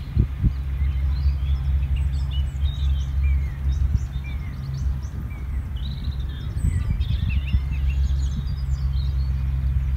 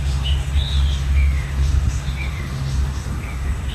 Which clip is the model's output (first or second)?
second